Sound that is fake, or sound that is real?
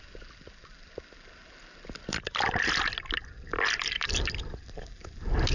real